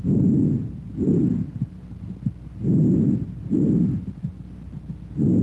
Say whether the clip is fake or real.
real